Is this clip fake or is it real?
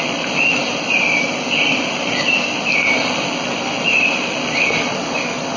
real